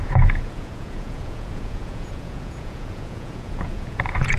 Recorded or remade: remade